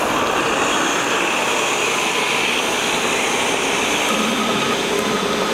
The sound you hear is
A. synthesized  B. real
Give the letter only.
B